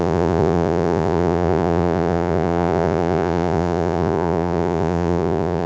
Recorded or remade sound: remade